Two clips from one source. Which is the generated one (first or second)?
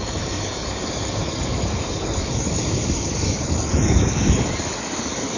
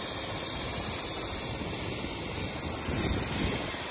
first